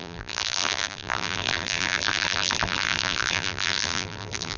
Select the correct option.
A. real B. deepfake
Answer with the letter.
B